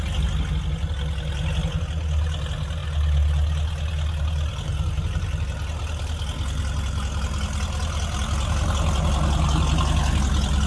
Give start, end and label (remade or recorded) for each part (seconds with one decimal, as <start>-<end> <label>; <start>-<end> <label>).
0.0-10.7 recorded